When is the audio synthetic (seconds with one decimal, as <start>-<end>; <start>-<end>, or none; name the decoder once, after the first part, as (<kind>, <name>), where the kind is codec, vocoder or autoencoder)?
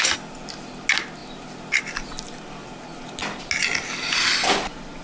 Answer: none